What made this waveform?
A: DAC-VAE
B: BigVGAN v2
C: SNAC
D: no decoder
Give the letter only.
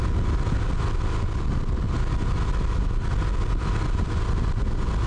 D